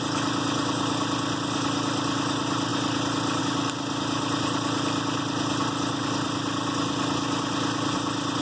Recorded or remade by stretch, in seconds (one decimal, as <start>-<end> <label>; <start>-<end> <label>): 0.0-8.4 recorded